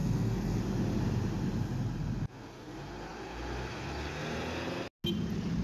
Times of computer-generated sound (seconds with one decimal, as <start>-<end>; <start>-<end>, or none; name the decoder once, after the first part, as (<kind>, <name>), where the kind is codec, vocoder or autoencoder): 0.0-0.6 (codec, SNAC)